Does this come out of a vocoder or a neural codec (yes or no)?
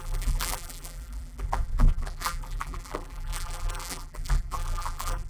yes